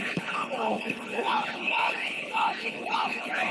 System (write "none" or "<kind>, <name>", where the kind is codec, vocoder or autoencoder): codec, HILCodec